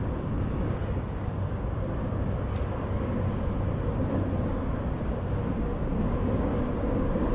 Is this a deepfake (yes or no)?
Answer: yes